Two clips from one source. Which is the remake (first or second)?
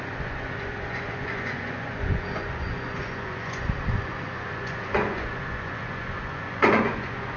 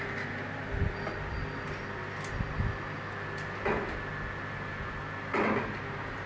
first